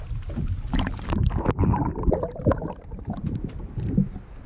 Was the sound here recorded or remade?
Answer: recorded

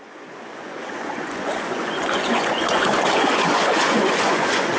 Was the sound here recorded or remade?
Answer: remade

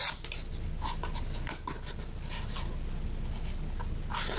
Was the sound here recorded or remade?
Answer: recorded